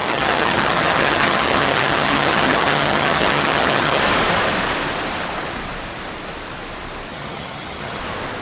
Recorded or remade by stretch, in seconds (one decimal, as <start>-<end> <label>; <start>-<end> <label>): 0.0-4.0 remade; 4.0-7.1 recorded; 7.1-8.0 remade; 8.0-8.4 recorded